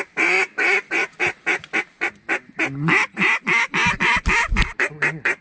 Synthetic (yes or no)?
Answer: no